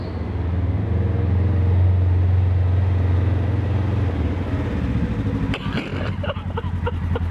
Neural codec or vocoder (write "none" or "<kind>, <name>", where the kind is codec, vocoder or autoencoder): none